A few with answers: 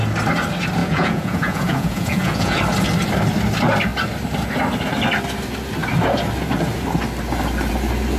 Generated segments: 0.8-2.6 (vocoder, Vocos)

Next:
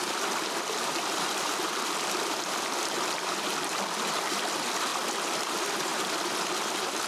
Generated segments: 0.0-4.3 (vocoder, BigVGAN v2)

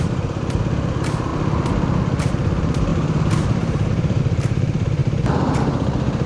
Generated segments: 0.0-1.3 (vocoder, BigVGAN v2); 2.3-6.3